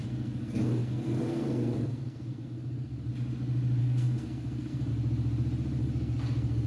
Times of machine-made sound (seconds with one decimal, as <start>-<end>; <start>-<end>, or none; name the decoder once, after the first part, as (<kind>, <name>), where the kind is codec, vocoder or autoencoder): 0.0-3.1 (codec, SNAC); 3.8-4.9; 5.8-6.7